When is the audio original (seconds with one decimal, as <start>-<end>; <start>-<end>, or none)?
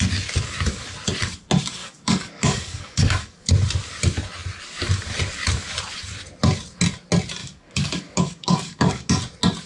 0.0-1.8; 3.5-7.4; 9.1-9.7